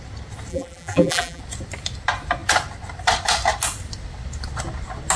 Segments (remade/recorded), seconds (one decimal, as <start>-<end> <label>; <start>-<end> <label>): 0.0-0.5 recorded; 0.5-1.4 remade; 1.4-5.2 recorded